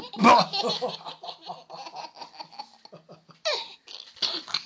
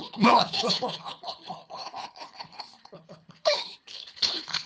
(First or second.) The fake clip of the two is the second